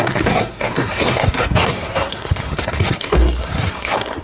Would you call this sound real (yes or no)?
no